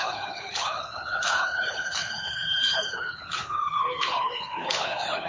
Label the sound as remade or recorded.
remade